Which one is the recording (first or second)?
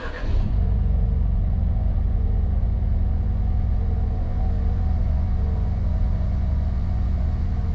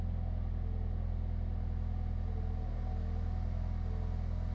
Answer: second